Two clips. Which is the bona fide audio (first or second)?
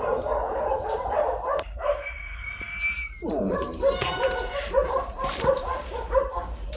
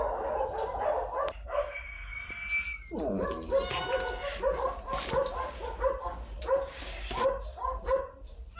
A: second